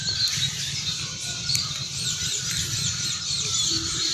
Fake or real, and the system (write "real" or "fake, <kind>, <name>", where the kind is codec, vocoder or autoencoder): fake, vocoder, BigVGAN v2